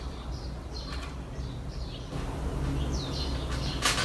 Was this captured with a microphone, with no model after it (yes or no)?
yes